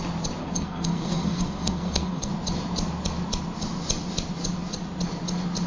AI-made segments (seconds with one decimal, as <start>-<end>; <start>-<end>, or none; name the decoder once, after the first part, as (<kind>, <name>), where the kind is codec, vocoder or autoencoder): 0.4-2.3 (codec, SNAC)